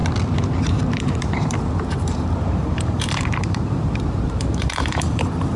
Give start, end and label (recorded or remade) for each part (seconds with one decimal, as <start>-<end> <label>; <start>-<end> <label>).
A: 0.0-0.6 recorded; 0.6-5.6 remade

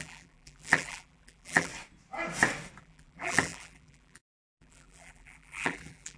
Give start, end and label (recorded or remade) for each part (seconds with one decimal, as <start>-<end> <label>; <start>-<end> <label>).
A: 0.0-1.7 remade; 1.7-2.8 recorded; 2.8-6.2 remade